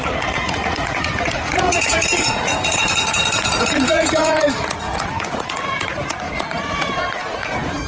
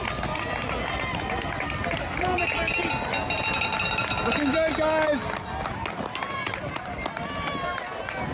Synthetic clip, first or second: first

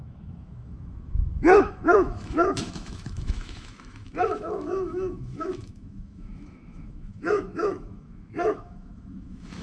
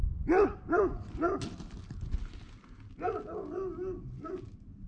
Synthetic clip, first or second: first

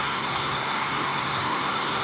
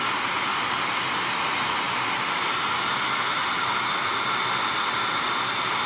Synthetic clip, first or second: first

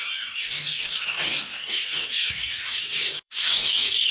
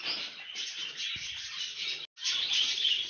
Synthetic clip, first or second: first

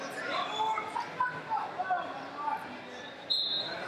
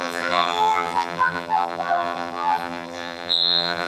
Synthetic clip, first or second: second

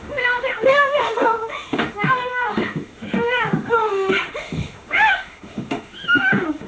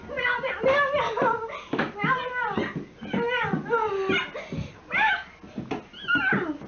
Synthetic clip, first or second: first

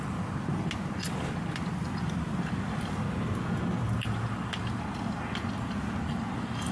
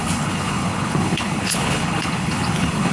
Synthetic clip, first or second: second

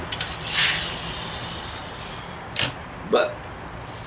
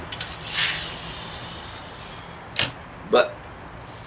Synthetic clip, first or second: first